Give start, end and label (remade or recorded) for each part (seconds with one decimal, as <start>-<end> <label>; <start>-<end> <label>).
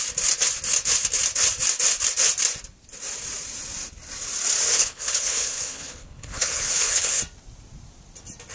0.0-4.7 recorded; 4.7-7.2 remade; 7.2-8.5 recorded